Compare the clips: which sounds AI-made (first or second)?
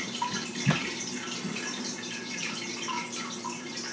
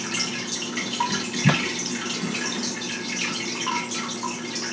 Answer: first